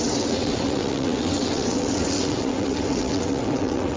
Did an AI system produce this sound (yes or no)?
yes